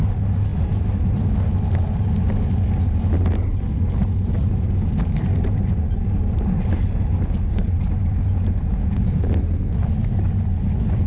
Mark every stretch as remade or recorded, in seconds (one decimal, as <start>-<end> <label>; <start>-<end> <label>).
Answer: 0.0-8.7 recorded; 8.7-9.2 remade; 9.2-11.1 recorded